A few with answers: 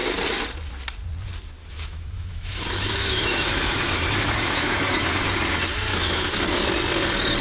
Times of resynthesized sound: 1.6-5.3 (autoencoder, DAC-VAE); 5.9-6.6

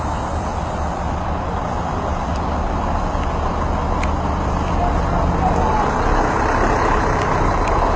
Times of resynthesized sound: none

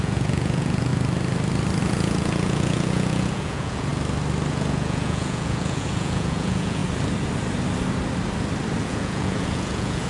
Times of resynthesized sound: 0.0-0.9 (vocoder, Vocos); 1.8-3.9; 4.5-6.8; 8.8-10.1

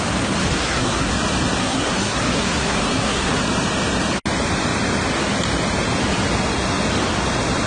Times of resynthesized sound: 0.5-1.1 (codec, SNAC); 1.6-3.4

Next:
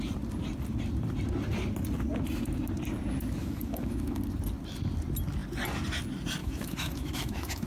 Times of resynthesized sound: 3.4-4.2 (autoencoder, DAC-VAE); 6.4-7.7

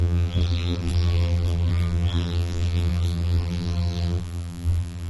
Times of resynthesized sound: 0.0-5.1 (vocoder, BigVGAN v2)